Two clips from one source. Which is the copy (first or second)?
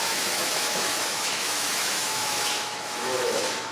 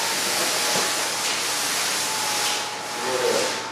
first